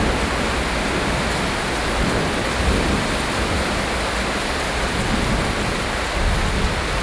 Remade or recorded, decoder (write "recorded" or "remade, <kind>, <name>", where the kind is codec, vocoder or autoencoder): recorded